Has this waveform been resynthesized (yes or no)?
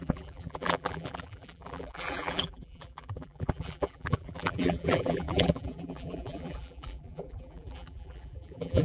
yes